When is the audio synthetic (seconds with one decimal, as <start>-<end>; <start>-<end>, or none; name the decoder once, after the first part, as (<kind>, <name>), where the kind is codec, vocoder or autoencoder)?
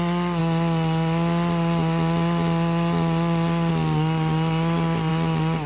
none